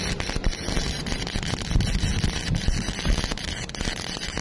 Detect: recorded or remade recorded